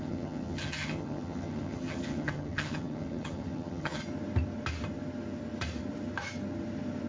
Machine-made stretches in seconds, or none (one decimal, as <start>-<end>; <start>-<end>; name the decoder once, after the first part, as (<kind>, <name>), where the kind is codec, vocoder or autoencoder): 0.0-4.0 (vocoder, HiFi-GAN)